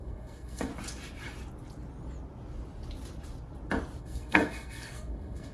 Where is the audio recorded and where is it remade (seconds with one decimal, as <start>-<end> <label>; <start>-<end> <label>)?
0.0-0.7 remade; 0.7-4.0 recorded; 4.0-5.5 remade